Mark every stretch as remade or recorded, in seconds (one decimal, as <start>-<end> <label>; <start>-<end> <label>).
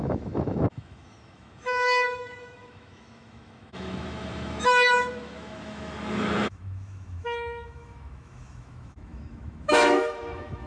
0.0-10.7 remade